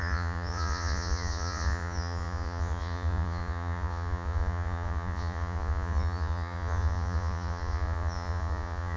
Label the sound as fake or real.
fake